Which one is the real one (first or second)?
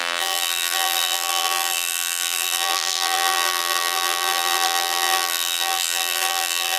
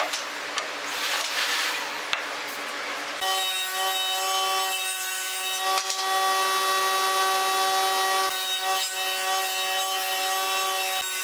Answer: second